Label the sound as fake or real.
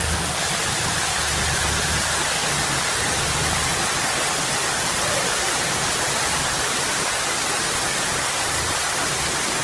real